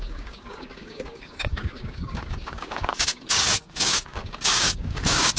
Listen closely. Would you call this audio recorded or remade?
remade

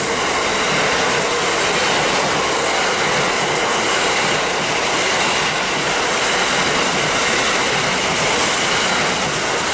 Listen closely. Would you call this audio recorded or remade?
recorded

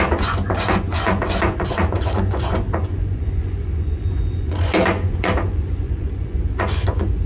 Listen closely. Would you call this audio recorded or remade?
remade